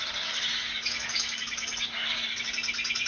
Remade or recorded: remade